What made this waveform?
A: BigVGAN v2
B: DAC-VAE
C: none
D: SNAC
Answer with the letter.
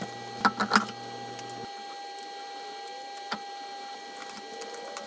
C